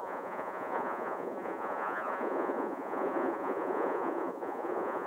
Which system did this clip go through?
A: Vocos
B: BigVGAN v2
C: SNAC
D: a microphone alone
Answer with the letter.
A